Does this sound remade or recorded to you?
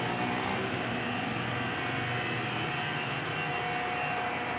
recorded